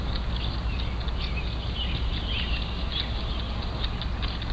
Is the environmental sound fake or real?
real